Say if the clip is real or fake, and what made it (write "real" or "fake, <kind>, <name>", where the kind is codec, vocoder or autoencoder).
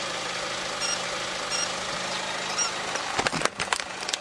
real